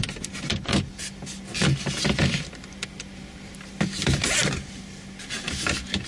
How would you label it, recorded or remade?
recorded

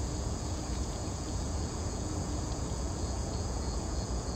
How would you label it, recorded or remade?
remade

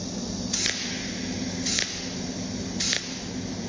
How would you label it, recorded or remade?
recorded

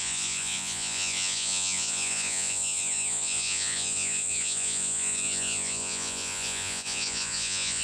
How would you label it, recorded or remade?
remade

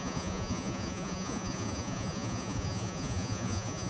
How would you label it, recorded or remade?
remade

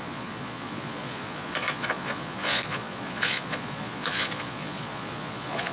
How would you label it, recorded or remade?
remade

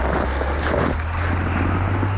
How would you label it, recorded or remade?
recorded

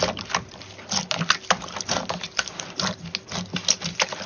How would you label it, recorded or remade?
recorded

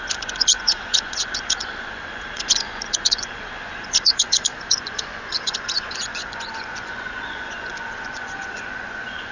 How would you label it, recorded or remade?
remade